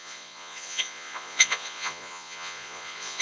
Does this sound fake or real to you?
fake